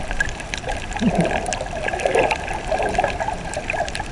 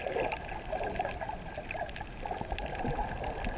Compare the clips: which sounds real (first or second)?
second